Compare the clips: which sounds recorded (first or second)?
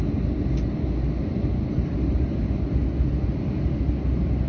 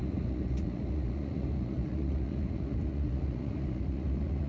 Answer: first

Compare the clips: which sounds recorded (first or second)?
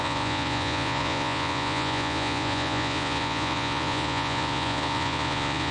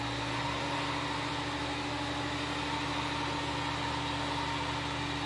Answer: second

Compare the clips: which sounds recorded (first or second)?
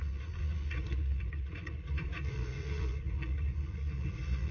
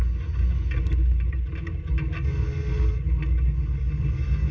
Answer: second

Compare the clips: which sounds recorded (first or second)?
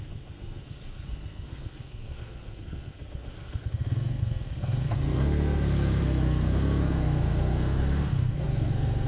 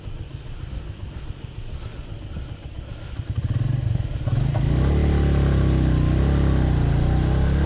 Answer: second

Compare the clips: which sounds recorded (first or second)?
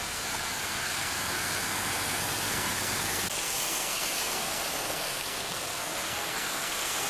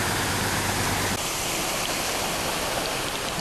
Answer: second